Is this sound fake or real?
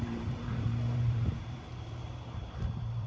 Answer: fake